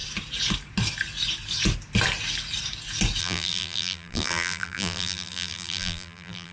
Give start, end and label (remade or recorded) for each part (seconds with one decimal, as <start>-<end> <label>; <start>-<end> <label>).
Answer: 0.0-3.2 recorded; 3.2-6.5 remade